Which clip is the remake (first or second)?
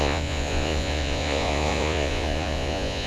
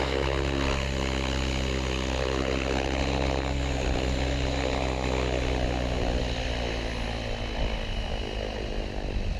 first